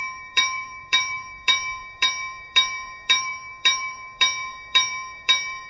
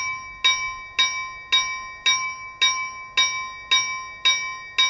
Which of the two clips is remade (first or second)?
first